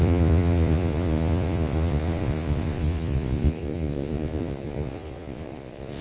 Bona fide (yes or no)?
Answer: no